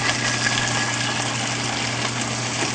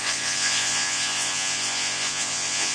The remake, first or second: second